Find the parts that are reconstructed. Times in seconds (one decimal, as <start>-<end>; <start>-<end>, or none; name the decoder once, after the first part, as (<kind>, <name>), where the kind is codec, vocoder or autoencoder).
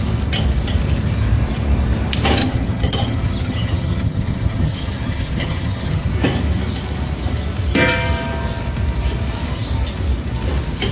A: 2.4-6.1 (vocoder, HiFi-GAN)